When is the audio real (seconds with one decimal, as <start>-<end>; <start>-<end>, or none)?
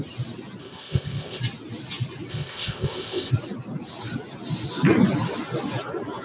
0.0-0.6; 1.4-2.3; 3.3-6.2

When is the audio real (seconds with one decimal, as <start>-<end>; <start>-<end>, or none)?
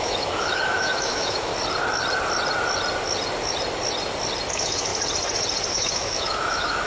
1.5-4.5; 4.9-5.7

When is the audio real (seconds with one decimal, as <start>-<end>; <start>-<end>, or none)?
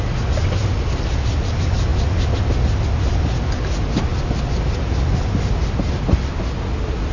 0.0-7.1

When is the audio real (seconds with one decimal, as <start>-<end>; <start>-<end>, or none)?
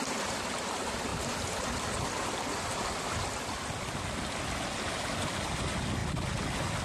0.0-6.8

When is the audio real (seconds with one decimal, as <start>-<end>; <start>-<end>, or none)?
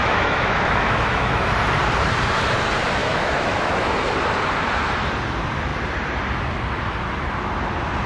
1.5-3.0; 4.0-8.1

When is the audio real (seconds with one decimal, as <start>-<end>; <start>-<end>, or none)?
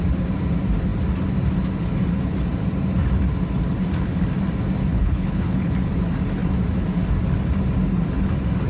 0.0-4.9; 5.7-8.7